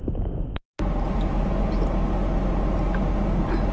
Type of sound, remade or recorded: recorded